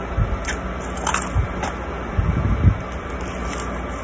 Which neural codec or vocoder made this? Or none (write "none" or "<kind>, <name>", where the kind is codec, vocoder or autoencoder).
none